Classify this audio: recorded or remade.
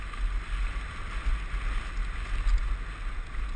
recorded